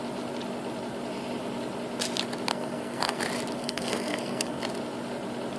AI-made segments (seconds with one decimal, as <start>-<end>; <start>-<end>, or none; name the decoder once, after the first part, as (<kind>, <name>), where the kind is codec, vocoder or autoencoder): 2.5-3.2 (codec, SNAC); 3.6-4.6

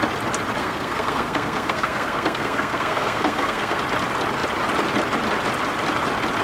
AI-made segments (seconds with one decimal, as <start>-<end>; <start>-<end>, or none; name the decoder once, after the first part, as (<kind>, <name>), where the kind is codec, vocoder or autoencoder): 0.6-3.8 (codec, SNAC)

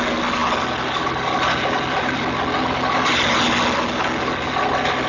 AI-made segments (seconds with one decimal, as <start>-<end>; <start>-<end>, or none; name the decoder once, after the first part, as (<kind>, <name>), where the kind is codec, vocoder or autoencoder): none

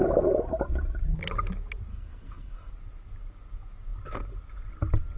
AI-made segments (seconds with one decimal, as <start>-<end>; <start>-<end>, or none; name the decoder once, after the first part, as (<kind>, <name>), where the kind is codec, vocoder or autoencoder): 1.9-2.7 (codec, SNAC)

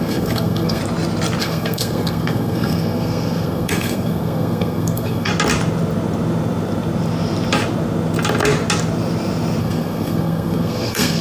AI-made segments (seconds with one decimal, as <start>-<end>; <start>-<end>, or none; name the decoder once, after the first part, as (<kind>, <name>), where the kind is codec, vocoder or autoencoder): 0.0-0.8 (codec, SNAC); 1.4-5.3; 9.6-11.2

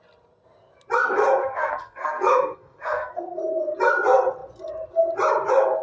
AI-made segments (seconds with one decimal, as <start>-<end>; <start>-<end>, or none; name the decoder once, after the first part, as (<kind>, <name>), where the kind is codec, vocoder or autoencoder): 1.4-3.4 (codec, SNAC)

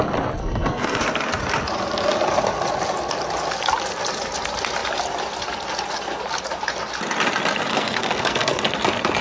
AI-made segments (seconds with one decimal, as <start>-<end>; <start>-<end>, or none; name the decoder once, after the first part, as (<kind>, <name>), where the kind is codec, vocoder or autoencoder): 0.4-1.0 (codec, SNAC); 7.7-8.6